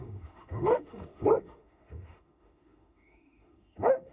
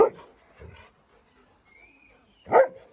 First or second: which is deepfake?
first